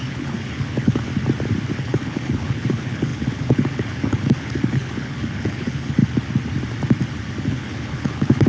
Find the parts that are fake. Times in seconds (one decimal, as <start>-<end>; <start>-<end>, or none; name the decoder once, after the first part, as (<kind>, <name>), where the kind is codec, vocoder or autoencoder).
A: 0.0-1.1 (codec, HILCodec); 1.7-6.0; 7.4-8.5